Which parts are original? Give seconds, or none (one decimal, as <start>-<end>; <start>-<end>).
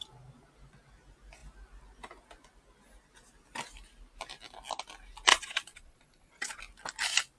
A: 0.0-5.3; 6.6-7.4